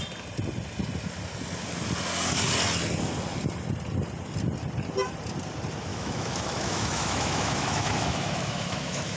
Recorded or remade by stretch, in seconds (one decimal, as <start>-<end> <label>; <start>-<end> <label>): 0.0-5.9 recorded; 5.9-9.2 remade